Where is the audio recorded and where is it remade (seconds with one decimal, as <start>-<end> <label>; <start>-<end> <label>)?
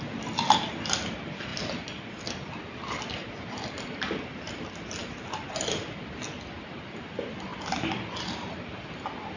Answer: 0.0-9.4 recorded